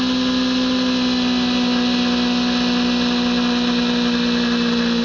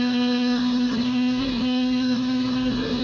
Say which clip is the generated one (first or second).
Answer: second